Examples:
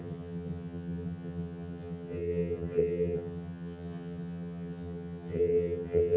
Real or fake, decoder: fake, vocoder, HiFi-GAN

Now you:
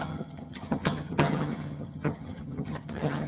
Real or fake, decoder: fake, vocoder, HiFi-GAN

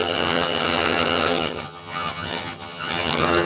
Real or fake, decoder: fake, vocoder, HiFi-GAN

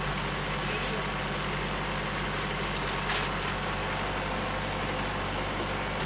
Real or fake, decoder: real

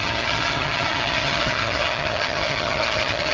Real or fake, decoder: fake, vocoder, HiFi-GAN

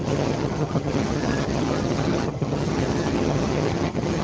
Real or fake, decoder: fake, vocoder, HiFi-GAN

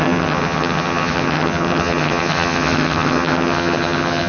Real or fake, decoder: fake, vocoder, HiFi-GAN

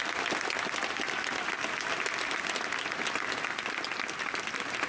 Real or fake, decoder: real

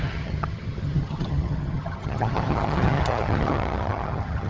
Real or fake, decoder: fake, vocoder, HiFi-GAN